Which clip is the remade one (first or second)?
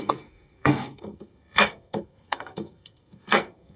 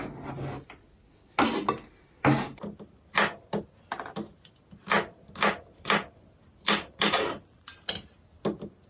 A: first